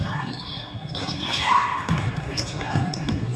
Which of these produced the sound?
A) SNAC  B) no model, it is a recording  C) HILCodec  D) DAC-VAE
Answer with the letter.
A